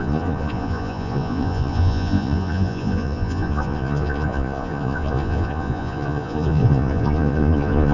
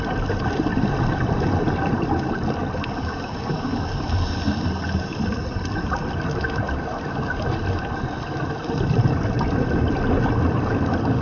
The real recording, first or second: second